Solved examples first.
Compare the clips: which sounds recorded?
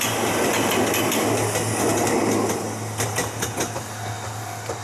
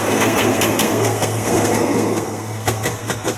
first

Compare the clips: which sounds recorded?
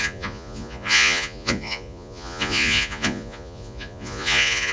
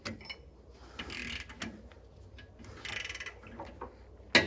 second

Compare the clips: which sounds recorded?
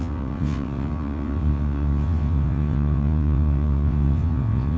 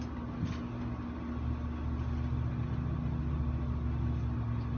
second